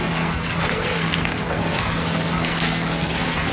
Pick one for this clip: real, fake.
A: fake